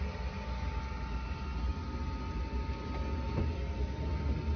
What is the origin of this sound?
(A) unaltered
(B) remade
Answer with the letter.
A